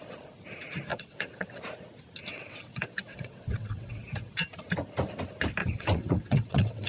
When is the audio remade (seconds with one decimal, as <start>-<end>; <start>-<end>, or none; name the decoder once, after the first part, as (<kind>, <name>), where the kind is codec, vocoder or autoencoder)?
0.9-1.6 (vocoder, WaveNeXt); 2.3-4.0; 5.6-6.9